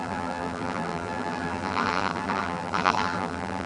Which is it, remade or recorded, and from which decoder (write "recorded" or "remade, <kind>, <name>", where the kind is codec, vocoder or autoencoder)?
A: remade, vocoder, BigVGAN v2